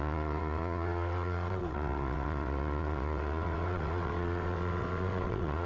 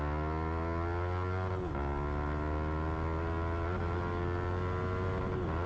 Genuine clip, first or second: second